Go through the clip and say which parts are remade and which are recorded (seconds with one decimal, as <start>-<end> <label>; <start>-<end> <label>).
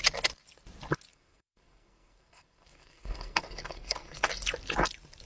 0.0-1.1 recorded; 1.1-4.3 remade; 4.3-5.3 recorded